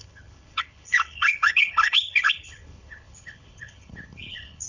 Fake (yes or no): yes